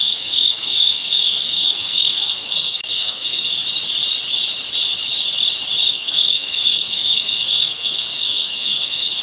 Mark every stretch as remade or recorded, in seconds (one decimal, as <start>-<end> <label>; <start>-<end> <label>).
0.0-3.5 remade; 3.5-5.9 recorded; 5.9-9.2 remade